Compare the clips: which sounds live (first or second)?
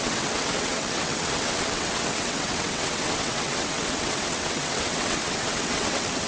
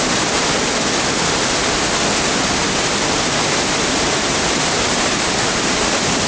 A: second